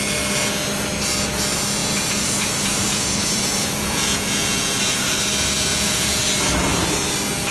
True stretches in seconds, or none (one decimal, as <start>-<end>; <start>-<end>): 0.0-1.8; 5.2-5.7; 6.2-7.5

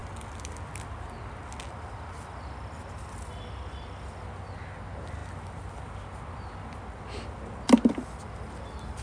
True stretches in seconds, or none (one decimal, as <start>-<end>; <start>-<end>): 0.0-9.0

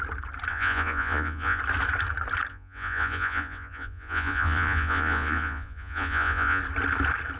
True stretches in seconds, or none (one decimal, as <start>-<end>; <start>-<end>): 0.0-0.5; 1.6-2.5; 6.6-7.4

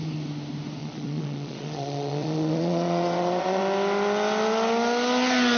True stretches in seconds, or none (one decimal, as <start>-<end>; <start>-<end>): 0.0-0.8; 3.6-5.6

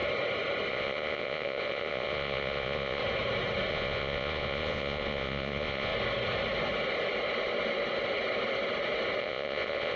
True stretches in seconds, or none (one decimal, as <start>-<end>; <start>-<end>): 0.0-0.7; 3.0-3.7; 5.9-9.2

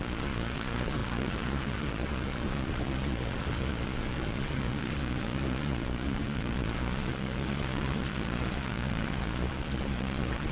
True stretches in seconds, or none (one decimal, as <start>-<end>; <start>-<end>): none